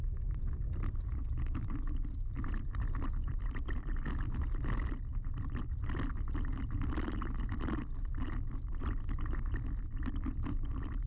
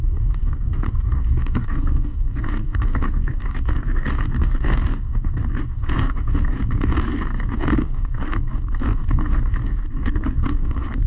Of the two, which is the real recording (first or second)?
first